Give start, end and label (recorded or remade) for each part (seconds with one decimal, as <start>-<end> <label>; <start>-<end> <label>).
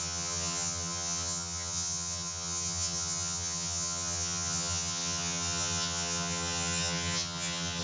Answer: 0.0-7.8 remade